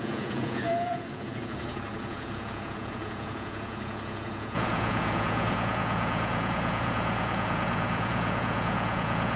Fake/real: fake